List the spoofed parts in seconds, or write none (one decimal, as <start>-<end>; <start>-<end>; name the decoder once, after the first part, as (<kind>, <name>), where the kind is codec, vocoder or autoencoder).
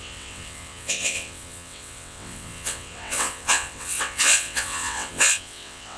0.0-6.0 (vocoder, WaveNeXt)